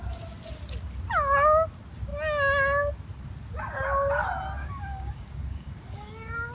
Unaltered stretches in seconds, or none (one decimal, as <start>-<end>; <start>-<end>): 0.0-4.6